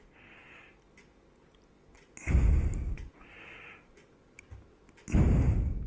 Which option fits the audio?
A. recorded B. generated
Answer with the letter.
A